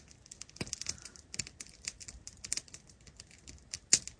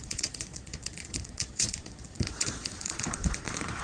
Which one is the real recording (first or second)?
first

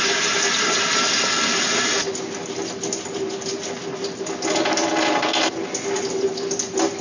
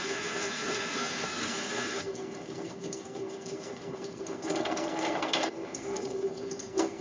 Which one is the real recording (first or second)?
first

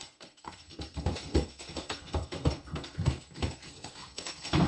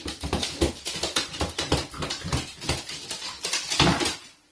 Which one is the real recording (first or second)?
second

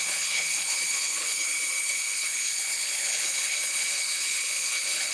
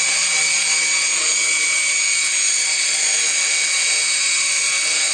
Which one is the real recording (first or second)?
second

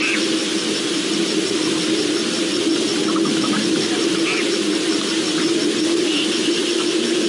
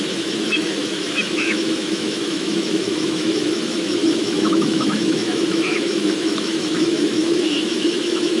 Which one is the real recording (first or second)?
first